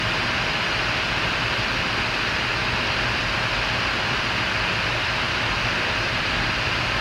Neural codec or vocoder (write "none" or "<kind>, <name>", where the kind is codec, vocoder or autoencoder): none